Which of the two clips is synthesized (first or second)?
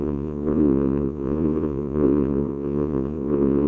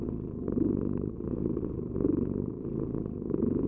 first